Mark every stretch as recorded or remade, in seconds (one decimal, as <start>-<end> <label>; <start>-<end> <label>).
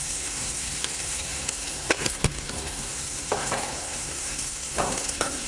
0.0-5.5 remade